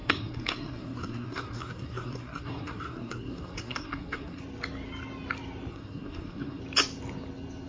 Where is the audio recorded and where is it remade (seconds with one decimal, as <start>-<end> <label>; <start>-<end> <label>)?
0.0-4.4 remade; 4.4-5.7 recorded; 5.7-6.6 remade; 6.6-7.7 recorded